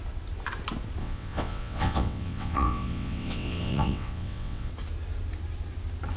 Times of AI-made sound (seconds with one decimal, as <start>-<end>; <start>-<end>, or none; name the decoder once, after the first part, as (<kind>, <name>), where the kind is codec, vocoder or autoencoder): 1.0-4.7 (vocoder, WaveNeXt)